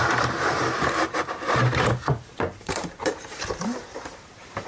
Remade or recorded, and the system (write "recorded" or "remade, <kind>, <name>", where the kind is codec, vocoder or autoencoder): remade, vocoder, BigVGAN v2